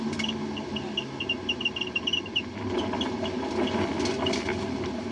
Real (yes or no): yes